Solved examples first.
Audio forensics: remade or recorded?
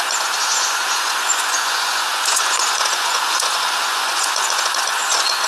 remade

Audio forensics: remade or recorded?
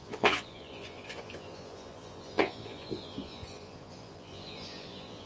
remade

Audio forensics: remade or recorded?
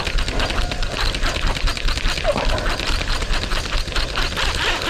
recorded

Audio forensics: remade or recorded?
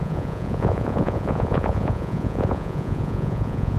remade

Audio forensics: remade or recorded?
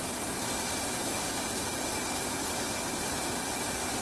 recorded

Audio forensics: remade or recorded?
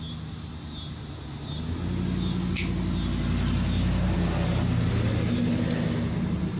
recorded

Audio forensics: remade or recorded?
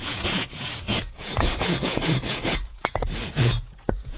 remade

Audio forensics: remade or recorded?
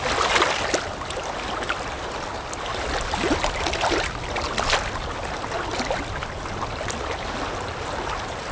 recorded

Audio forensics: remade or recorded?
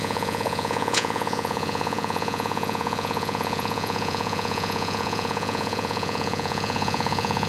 remade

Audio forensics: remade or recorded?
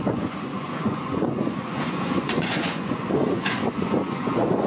remade